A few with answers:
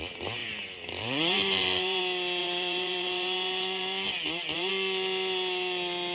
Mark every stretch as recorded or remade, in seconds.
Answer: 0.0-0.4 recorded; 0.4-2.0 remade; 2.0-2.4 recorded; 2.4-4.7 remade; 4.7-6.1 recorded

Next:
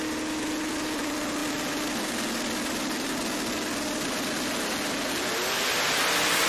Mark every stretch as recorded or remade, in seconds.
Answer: 0.0-6.5 recorded